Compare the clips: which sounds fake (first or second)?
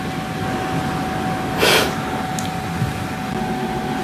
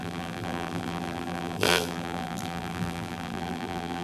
second